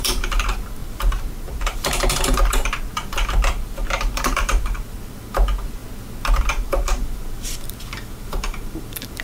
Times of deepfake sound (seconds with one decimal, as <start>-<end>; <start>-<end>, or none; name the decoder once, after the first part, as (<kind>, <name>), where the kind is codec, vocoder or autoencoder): 0.0-5.8 (vocoder, BigVGAN v2); 6.4-9.2